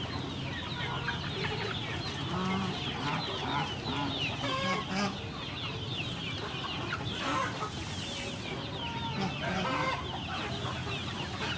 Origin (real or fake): real